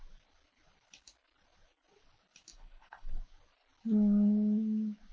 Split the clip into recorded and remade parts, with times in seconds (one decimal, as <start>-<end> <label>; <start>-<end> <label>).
0.0-2.5 recorded; 2.5-3.2 remade; 3.2-5.1 recorded